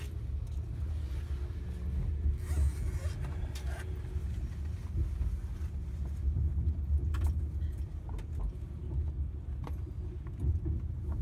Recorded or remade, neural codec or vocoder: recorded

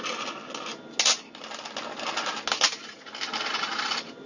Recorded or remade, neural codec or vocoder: recorded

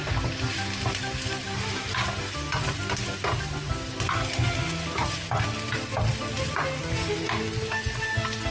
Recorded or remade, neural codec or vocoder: recorded